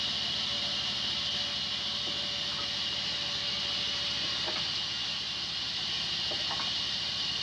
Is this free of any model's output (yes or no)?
yes